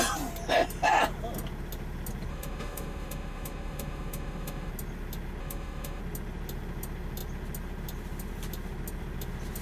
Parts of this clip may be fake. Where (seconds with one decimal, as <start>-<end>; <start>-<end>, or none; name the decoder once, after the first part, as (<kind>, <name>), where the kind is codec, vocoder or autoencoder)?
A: 2.3-4.7 (autoencoder, DAC-VAE); 5.4-6.0